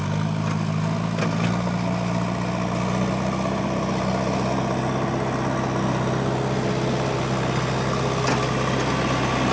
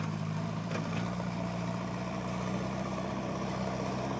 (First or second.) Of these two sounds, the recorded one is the first